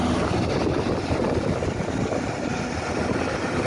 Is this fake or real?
real